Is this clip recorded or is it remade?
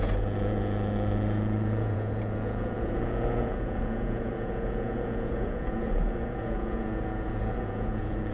remade